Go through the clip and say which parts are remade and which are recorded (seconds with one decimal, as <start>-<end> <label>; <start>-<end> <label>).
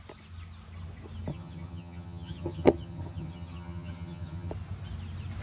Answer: 0.0-1.3 recorded; 1.3-4.5 remade; 4.5-5.4 recorded